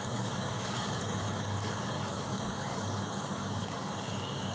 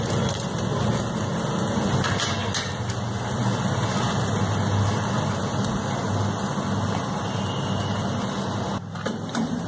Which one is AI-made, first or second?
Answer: first